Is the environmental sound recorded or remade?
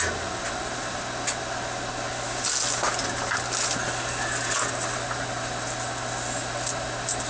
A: recorded